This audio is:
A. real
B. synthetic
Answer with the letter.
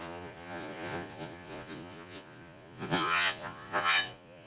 B